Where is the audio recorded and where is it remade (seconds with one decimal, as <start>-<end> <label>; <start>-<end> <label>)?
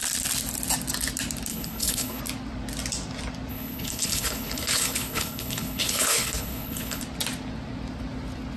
0.0-1.5 recorded; 1.5-2.2 remade; 2.2-3.5 recorded; 3.5-7.0 remade; 7.0-8.6 recorded